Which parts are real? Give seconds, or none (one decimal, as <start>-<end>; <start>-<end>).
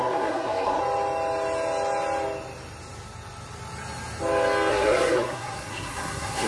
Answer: 0.8-4.7